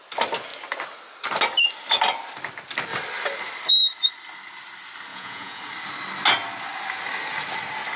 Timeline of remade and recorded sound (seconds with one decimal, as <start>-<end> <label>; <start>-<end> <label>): 0.0-5.1 recorded; 5.1-5.6 remade; 5.6-8.0 recorded